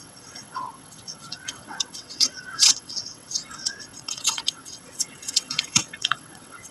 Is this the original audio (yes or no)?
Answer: no